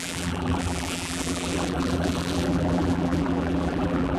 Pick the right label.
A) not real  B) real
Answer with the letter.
A